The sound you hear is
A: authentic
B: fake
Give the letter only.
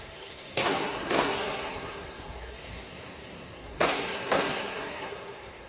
B